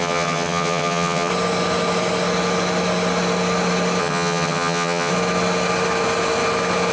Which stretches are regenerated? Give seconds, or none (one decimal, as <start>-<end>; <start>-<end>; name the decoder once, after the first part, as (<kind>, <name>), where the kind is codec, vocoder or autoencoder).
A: 0.0-1.3 (vocoder, HiFi-GAN); 4.0-5.1